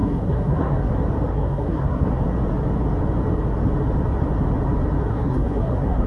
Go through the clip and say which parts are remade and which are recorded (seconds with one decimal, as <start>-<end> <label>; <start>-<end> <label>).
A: 0.0-0.9 remade; 0.9-1.3 recorded; 1.3-2.1 remade; 2.1-5.1 recorded; 5.1-6.1 remade